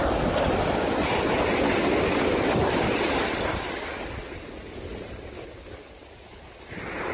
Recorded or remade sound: recorded